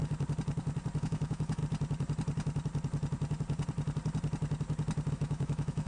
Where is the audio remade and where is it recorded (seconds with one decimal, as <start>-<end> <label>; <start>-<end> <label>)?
0.0-1.0 recorded; 1.0-1.6 remade; 1.6-5.1 recorded; 5.1-5.9 remade